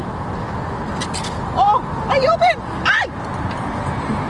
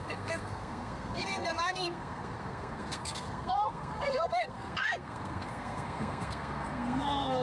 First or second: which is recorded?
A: first